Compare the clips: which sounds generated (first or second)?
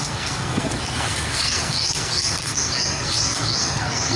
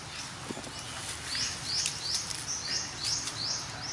first